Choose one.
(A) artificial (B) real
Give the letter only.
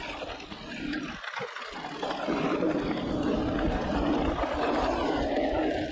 B